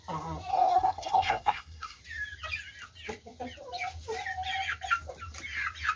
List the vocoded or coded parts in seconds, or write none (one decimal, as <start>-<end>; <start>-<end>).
0.5-2.0